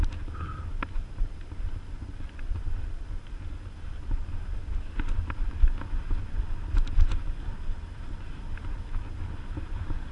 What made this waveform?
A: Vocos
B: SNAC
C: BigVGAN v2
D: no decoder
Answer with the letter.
D